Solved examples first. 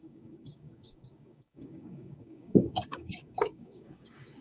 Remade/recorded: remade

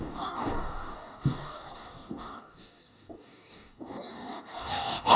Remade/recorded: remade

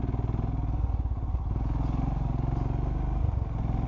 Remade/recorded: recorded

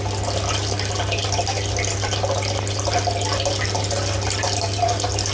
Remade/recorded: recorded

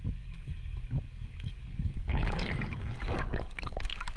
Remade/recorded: remade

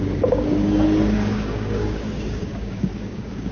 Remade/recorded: remade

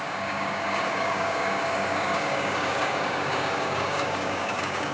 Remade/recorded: remade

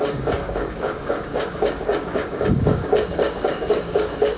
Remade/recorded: remade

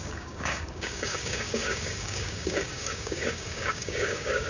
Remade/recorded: remade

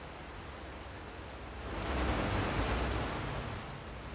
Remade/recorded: recorded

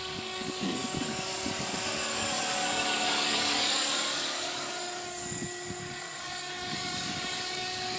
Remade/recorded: remade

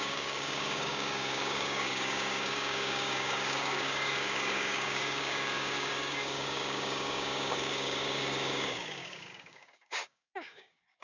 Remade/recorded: remade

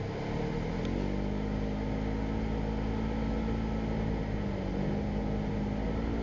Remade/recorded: recorded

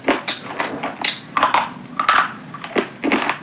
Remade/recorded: recorded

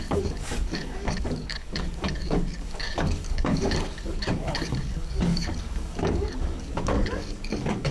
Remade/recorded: remade